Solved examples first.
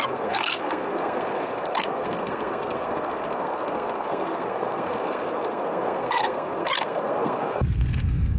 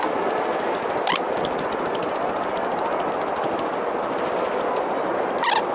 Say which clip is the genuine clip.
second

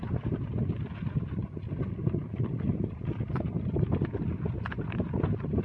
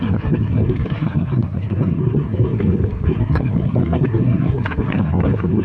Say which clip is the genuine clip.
first